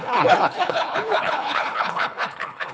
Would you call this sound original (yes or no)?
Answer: no